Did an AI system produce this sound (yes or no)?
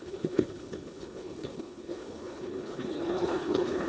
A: yes